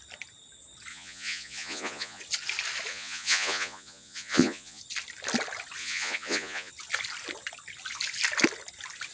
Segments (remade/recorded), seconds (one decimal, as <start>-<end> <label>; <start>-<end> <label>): 0.0-0.9 recorded; 0.9-2.2 remade; 2.2-2.9 recorded; 2.9-4.8 remade; 4.8-5.8 recorded; 5.8-6.7 remade; 6.7-9.1 recorded